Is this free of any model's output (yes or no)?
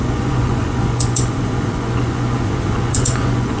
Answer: no